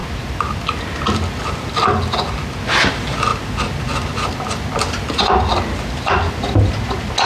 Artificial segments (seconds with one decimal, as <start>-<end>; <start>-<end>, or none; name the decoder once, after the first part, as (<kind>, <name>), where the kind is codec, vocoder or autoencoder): none